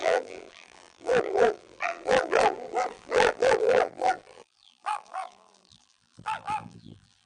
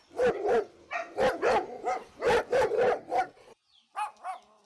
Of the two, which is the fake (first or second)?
first